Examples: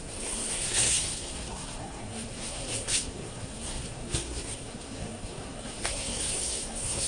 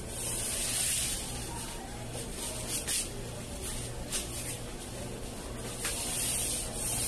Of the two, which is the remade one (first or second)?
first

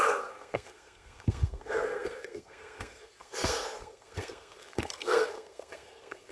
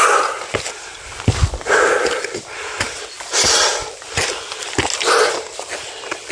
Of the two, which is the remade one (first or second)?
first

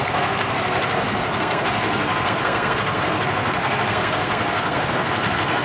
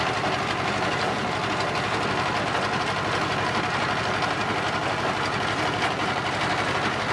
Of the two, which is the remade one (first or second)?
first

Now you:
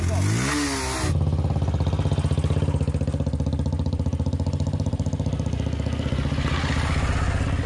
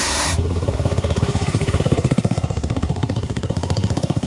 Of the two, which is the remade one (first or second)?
second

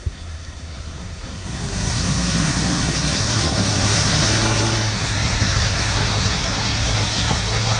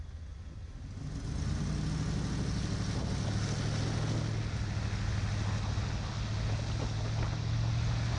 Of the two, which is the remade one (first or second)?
first